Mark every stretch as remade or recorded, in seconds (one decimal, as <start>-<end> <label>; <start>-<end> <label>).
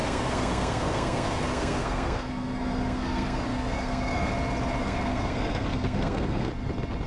0.0-4.3 remade; 4.3-4.8 recorded; 4.8-6.5 remade; 6.5-7.1 recorded